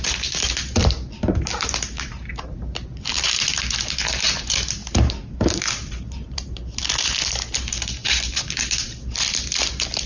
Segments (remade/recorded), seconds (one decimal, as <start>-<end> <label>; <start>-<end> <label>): 0.0-0.8 recorded; 0.8-3.5 remade; 3.5-4.8 recorded; 4.8-6.9 remade; 6.9-8.0 recorded; 8.0-9.0 remade; 9.0-10.1 recorded